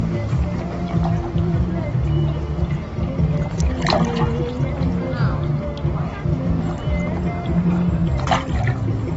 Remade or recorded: recorded